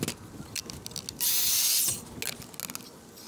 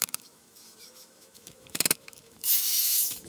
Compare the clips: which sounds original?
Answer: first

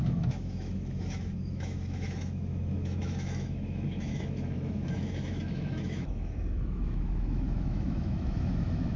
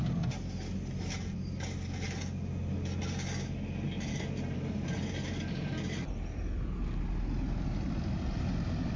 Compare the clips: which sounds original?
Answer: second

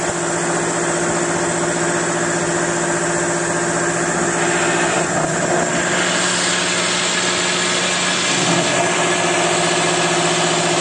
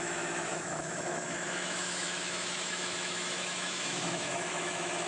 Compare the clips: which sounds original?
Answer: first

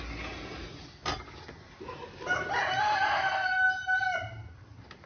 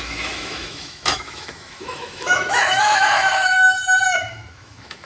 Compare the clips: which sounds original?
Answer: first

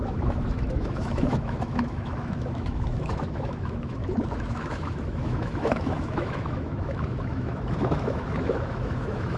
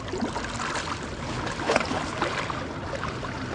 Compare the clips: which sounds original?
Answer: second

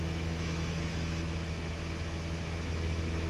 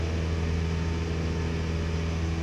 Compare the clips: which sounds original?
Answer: second